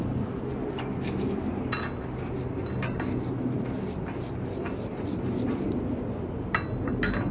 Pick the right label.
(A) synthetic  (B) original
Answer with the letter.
B